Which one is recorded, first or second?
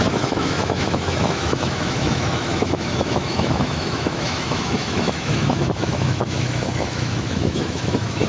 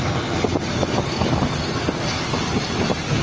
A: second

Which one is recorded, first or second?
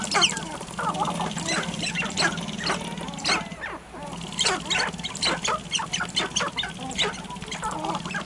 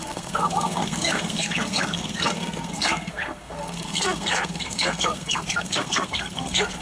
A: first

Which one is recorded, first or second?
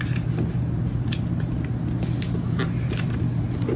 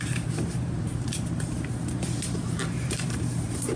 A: first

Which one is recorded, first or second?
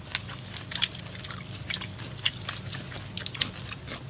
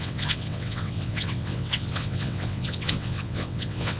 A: first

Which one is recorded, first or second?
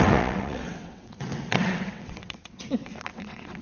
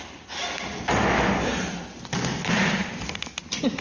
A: second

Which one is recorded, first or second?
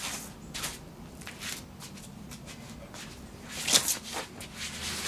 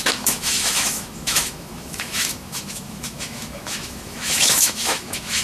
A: first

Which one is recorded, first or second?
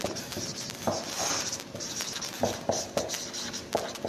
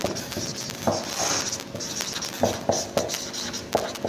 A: second